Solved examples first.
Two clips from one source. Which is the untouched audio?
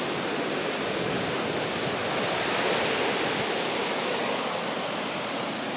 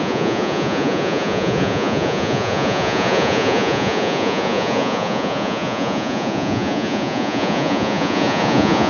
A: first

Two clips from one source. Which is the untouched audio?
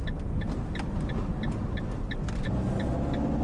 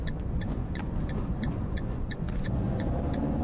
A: first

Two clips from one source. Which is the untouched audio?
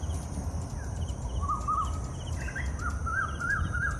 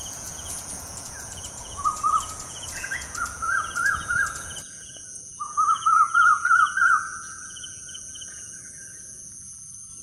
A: first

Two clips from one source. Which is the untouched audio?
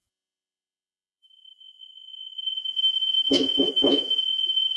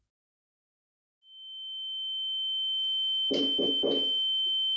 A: second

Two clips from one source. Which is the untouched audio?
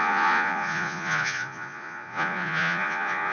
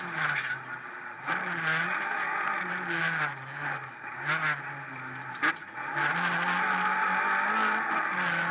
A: second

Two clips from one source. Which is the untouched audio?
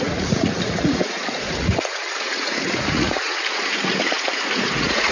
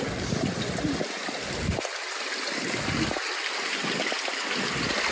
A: second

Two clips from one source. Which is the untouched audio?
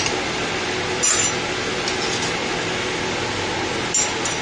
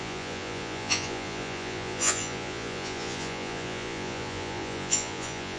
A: first